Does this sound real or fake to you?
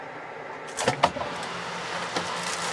real